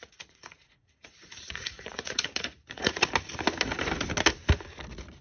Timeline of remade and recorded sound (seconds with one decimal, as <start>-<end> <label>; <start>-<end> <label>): 0.0-3.1 remade; 3.1-5.2 recorded